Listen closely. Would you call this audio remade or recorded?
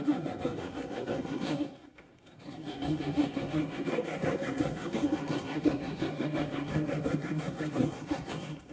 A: remade